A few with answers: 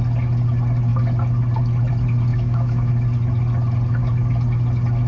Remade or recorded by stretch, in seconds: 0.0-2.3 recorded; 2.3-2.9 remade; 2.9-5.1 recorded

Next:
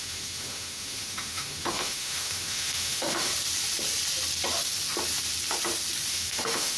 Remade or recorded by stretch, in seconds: 0.0-3.3 remade; 3.3-6.1 recorded; 6.1-6.8 remade

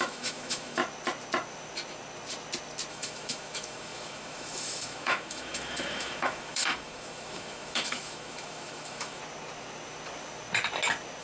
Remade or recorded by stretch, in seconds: 0.0-0.8 remade; 0.8-2.9 recorded; 2.9-9.2 remade; 9.2-11.2 recorded